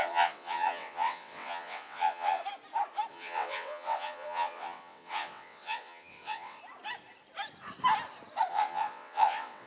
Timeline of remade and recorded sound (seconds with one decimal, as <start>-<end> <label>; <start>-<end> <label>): 0.0-2.4 remade; 2.4-3.1 recorded; 3.1-6.6 remade; 6.6-8.5 recorded; 8.5-9.7 remade